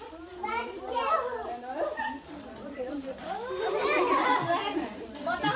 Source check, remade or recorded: remade